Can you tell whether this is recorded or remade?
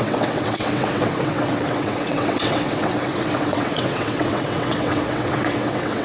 remade